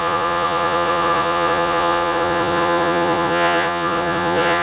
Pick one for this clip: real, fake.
fake